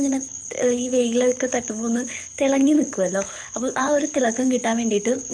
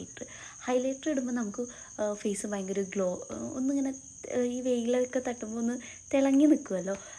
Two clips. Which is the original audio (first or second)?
second